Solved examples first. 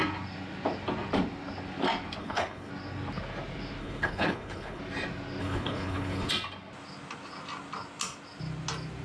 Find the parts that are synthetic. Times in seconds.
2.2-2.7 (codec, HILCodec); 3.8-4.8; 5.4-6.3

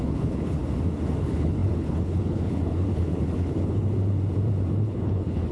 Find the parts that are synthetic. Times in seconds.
0.0-0.6 (codec, HILCodec); 1.2-3.9; 4.7-5.5

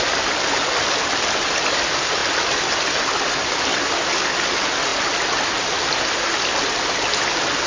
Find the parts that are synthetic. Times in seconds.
none

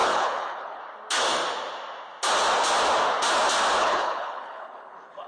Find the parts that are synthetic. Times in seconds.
0.0-0.8 (codec, HILCodec); 3.8-5.3

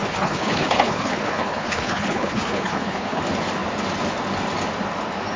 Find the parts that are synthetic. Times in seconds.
0.0-3.2 (codec, HILCodec)

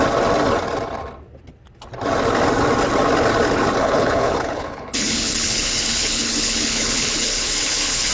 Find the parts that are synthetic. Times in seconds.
3.8-8.1 (codec, HILCodec)

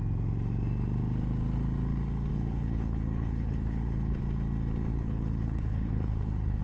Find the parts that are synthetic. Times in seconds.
2.3-4.2 (codec, HILCodec); 4.9-6.6

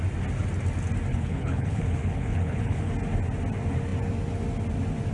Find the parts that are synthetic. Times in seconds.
1.1-2.9 (codec, HILCodec)